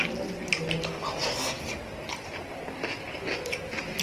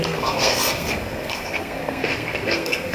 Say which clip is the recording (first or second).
first